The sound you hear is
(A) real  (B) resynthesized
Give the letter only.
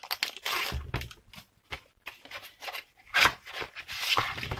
A